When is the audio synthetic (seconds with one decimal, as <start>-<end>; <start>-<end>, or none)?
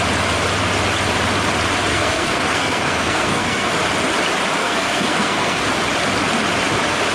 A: 1.9-3.7; 4.6-5.6